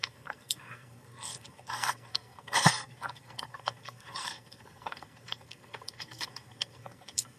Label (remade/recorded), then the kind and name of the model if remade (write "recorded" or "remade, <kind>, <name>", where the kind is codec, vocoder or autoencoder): remade, codec, SNAC